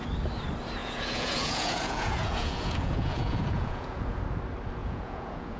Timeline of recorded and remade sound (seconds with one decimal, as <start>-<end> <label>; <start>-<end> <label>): 0.0-0.8 recorded; 0.8-4.2 remade; 4.2-4.8 recorded; 4.8-5.6 remade